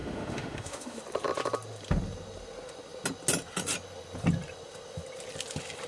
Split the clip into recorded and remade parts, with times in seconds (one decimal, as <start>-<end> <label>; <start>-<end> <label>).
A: 0.0-1.0 remade; 1.0-5.9 recorded